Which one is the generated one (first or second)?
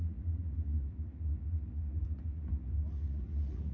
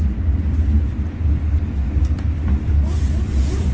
first